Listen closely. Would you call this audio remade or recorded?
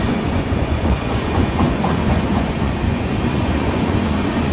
remade